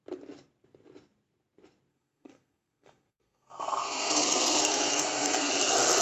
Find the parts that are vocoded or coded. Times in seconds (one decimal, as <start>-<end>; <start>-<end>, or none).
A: 1.9-5.5